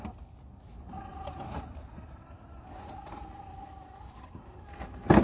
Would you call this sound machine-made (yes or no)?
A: no